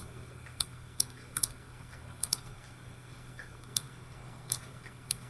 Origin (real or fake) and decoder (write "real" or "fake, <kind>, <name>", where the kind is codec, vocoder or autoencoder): fake, codec, SNAC